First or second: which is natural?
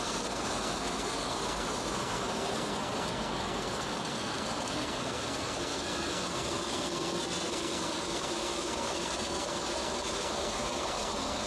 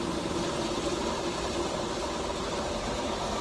second